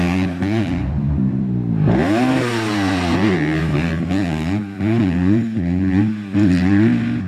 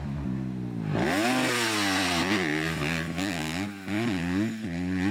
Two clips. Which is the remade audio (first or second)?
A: first